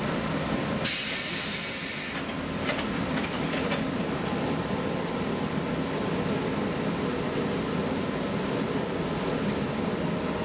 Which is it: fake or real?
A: real